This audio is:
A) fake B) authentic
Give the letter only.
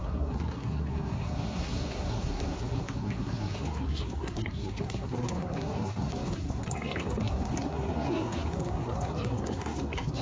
A